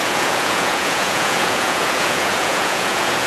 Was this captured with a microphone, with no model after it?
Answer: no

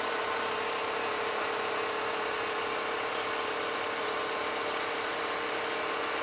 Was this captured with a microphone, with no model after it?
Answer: yes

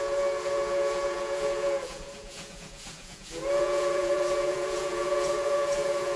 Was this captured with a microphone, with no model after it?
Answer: no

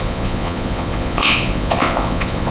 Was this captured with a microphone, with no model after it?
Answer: no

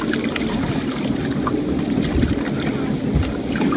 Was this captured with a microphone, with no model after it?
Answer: yes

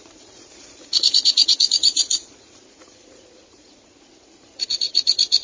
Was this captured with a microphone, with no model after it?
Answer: no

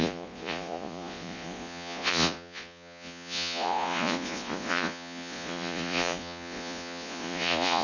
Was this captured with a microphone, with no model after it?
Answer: no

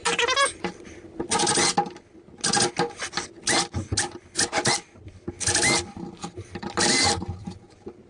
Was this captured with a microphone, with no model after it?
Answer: yes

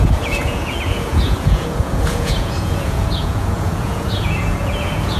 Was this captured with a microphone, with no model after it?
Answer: no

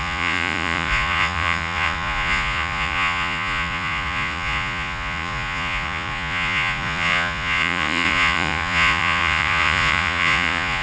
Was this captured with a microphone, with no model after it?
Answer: no